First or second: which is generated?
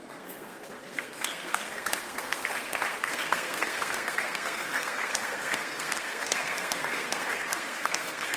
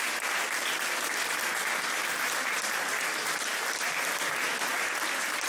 first